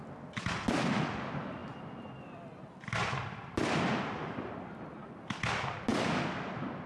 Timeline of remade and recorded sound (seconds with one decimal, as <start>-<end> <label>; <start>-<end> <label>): 0.0-1.6 recorded; 1.6-5.2 remade; 5.2-6.9 recorded